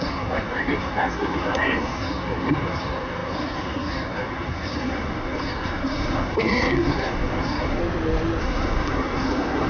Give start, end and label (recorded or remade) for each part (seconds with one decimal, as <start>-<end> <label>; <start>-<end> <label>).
0.0-7.8 remade; 7.8-8.4 recorded; 8.4-9.7 remade